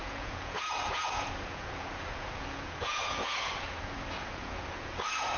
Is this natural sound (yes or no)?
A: no